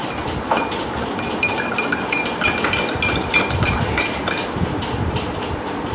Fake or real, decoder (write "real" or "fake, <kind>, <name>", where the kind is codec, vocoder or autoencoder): fake, vocoder, BigVGAN v2